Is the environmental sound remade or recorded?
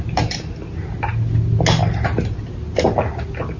recorded